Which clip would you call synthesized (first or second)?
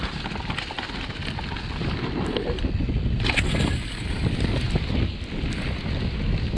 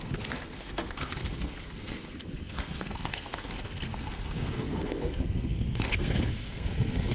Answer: second